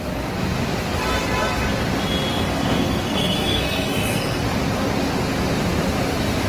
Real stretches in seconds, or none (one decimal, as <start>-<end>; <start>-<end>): 0.0-2.3; 4.4-6.5